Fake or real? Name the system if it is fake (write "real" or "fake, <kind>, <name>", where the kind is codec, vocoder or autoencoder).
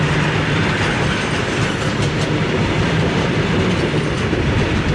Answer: fake, vocoder, BigVGAN v2